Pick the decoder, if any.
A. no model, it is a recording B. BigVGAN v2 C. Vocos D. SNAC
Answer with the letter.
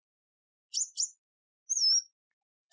A